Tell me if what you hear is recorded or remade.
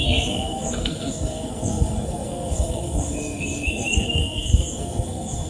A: remade